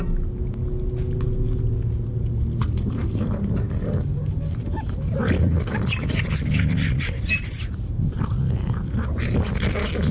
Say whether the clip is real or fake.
real